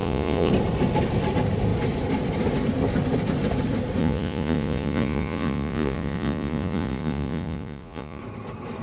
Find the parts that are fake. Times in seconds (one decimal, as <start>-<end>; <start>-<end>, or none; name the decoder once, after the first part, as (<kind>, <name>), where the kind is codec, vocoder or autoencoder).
0.0-0.5 (vocoder, Vocos); 4.0-8.2